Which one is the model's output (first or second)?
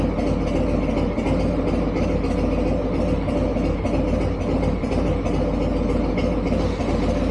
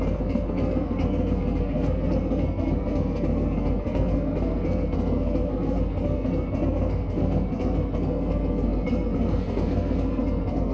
second